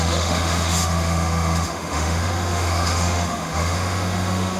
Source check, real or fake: fake